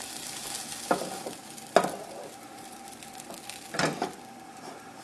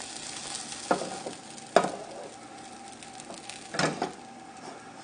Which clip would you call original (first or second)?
second